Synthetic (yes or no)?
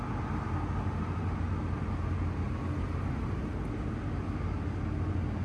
no